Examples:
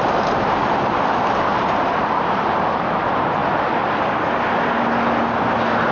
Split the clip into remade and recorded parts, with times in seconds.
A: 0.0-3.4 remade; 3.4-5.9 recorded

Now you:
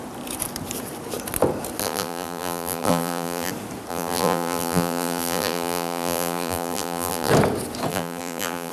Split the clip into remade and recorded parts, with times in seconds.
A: 0.0-1.8 recorded; 1.8-3.5 remade; 3.5-3.9 recorded; 3.9-7.3 remade; 7.3-7.9 recorded; 7.9-8.7 remade

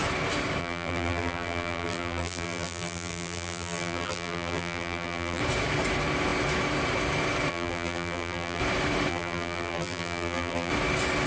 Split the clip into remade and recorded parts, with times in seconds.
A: 0.0-0.6 recorded; 0.6-5.4 remade; 5.4-7.5 recorded; 7.5-8.6 remade; 8.6-9.1 recorded; 9.1-10.7 remade; 10.7-11.3 recorded

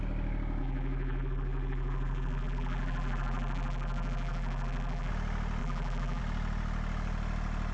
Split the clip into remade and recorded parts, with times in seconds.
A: 0.0-0.6 recorded; 0.6-5.1 remade; 5.1-5.6 recorded; 5.6-6.2 remade; 6.2-7.7 recorded